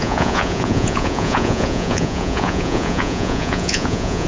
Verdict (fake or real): fake